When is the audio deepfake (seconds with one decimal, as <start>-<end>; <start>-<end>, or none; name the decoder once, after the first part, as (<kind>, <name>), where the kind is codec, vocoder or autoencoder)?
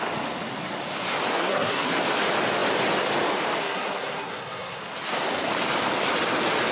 1.3-1.9 (codec, SNAC); 3.6-4.8